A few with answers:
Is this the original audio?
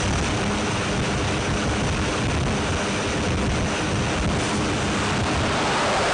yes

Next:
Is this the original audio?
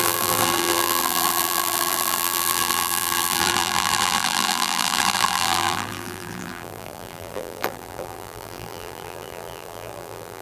no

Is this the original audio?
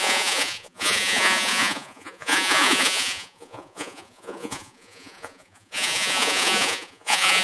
no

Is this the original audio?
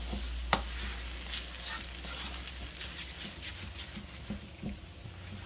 yes